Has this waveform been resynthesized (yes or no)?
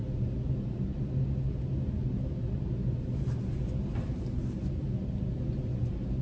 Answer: no